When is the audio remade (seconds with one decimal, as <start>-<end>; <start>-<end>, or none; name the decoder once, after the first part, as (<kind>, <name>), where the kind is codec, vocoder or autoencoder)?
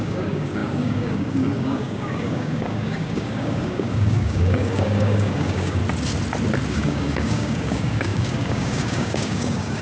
0.0-5.8 (codec, DAC); 6.7-9.8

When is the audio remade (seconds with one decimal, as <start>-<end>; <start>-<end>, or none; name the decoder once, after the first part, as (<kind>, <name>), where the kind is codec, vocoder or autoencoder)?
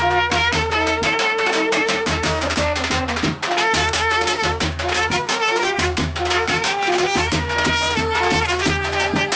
0.4-3.0 (codec, DAC); 3.8-7.7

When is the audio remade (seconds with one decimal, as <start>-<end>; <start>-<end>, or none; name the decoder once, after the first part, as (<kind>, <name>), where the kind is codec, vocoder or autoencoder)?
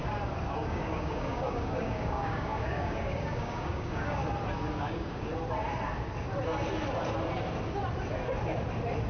0.6-4.2 (codec, DAC); 4.8-5.3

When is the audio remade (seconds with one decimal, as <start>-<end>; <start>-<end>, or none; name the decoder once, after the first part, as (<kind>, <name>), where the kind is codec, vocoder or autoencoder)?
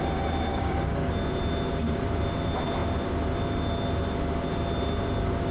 0.5-1.1 (codec, DAC)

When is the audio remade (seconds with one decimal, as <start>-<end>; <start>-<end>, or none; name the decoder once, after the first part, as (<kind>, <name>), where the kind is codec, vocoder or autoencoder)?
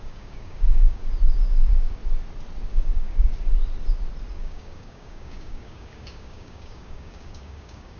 0.0-1.0 (codec, DAC); 1.5-2.0; 2.7-3.3; 4.3-8.0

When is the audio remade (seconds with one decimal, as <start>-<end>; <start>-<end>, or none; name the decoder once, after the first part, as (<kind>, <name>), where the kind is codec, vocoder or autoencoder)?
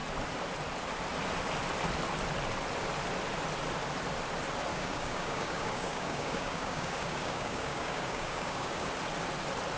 4.7-8.9 (codec, DAC)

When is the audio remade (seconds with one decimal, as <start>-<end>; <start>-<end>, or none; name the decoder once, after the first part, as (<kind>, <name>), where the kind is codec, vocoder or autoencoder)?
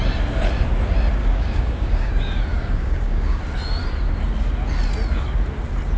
1.2-2.1 (codec, DAC); 2.5-3.4